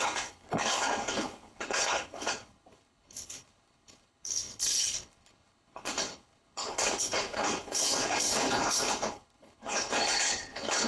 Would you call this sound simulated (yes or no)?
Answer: yes